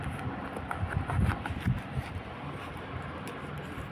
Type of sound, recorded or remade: recorded